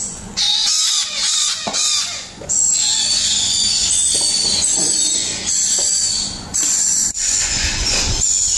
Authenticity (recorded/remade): remade